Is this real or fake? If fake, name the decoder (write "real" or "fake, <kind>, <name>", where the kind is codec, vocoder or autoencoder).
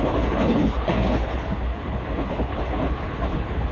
fake, codec, HILCodec